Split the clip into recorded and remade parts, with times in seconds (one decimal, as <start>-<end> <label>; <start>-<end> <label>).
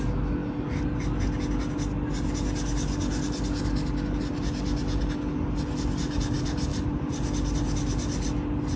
0.0-8.8 recorded